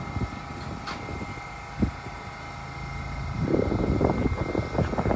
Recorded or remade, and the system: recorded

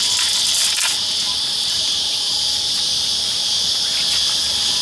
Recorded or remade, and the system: recorded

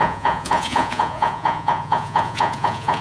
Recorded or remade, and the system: remade, vocoder, Vocos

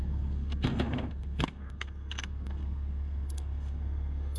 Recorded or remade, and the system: remade, codec, SNAC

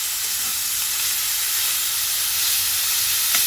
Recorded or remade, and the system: recorded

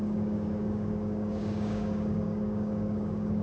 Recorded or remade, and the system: remade, codec, DAC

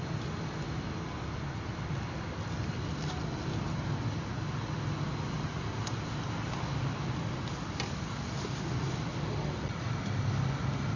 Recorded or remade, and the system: recorded